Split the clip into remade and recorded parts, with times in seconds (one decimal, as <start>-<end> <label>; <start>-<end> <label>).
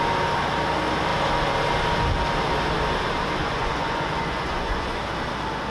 0.0-3.4 recorded; 3.4-5.0 remade; 5.0-5.7 recorded